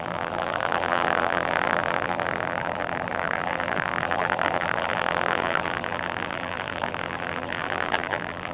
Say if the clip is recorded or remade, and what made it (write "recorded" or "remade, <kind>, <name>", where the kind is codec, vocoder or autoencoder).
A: remade, vocoder, BigVGAN v2